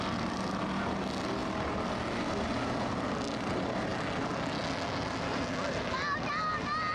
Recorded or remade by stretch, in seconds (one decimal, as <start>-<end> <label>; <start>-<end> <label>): 0.0-6.9 recorded